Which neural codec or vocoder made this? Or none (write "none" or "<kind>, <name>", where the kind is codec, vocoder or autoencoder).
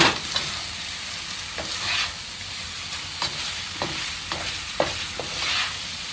none